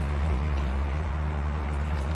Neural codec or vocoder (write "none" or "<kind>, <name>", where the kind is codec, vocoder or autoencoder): vocoder, Vocos